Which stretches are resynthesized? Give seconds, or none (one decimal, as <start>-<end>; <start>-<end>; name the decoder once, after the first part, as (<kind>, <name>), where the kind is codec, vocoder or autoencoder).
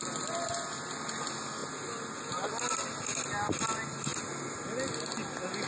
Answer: none